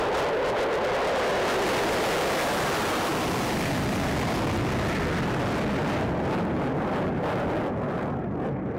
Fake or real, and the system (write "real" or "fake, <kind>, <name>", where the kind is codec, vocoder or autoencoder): real